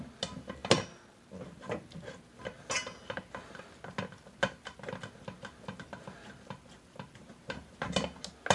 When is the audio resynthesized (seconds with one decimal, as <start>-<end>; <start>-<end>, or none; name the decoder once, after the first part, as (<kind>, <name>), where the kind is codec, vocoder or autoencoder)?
none